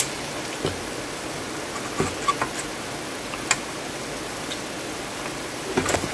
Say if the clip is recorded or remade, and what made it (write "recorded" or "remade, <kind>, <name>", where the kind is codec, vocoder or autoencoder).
recorded